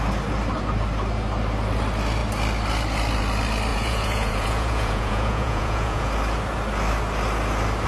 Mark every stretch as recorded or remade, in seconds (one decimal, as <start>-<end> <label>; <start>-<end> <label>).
0.0-3.7 recorded; 3.7-6.1 remade; 6.1-7.9 recorded